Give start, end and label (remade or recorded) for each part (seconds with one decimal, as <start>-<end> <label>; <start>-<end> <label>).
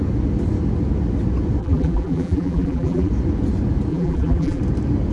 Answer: 0.0-1.6 recorded; 1.6-3.1 remade; 3.1-3.9 recorded; 3.9-4.6 remade; 4.6-5.1 recorded